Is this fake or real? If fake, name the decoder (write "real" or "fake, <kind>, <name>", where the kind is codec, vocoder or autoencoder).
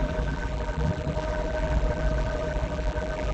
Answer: fake, vocoder, BigVGAN v2